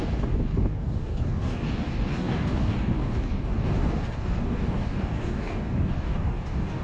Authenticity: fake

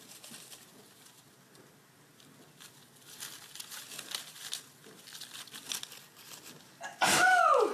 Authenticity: real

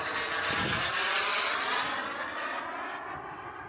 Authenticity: real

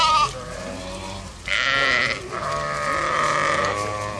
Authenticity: real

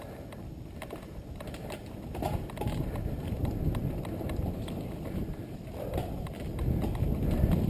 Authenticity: real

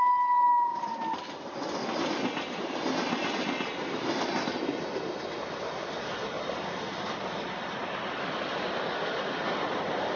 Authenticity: real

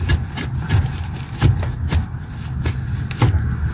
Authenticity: real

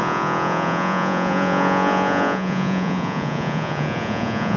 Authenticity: fake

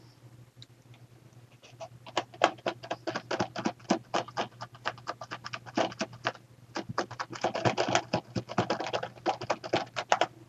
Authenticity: real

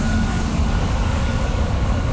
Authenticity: fake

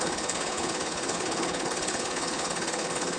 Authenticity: fake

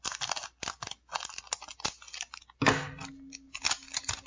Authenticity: real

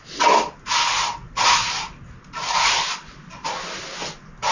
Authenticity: real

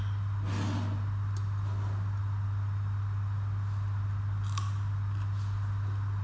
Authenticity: real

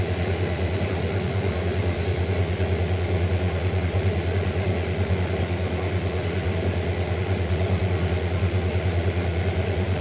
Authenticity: fake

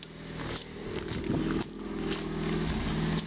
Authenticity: real